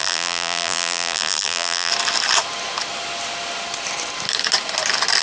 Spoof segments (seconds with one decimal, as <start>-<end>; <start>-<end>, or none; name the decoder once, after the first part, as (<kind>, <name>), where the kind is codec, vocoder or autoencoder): 0.0-1.9 (vocoder, BigVGAN v2)